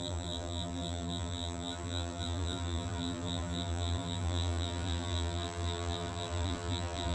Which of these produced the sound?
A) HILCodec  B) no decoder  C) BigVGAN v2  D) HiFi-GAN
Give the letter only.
C